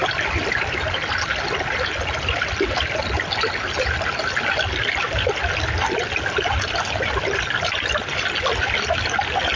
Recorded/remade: recorded